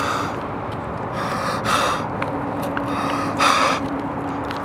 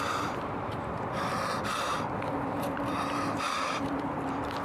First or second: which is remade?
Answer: second